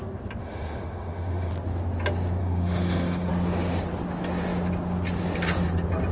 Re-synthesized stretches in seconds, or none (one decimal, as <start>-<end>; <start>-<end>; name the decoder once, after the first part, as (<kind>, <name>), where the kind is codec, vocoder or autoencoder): 0.4-1.5 (autoencoder, DAC-VAE); 2.4-3.3